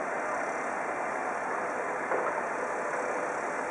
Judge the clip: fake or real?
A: real